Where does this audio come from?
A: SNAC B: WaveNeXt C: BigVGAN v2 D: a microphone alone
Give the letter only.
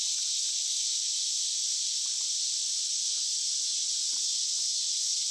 D